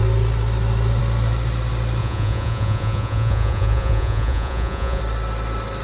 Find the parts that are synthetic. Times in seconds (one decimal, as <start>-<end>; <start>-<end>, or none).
2.0-5.0